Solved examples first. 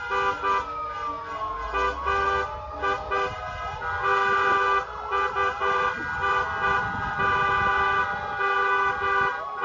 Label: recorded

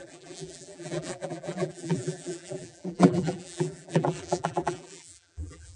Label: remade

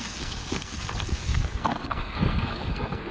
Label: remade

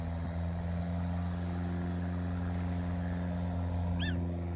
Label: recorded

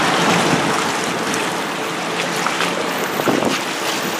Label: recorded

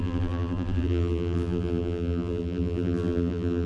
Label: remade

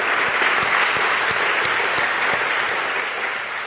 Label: recorded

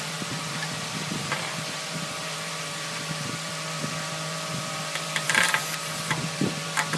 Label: remade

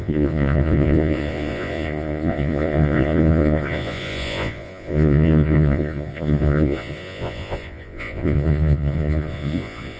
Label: remade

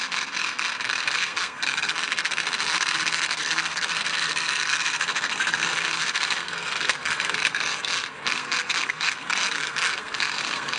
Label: remade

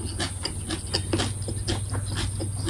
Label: recorded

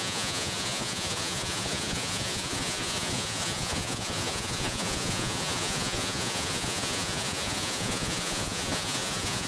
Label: remade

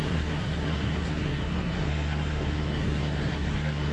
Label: remade